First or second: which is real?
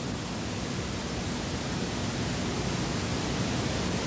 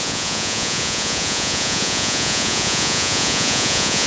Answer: first